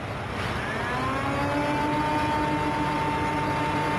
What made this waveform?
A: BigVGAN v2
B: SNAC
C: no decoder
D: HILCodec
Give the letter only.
C